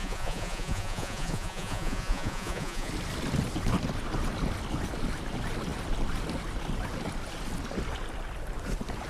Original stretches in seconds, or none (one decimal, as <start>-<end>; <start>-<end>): 2.9-9.1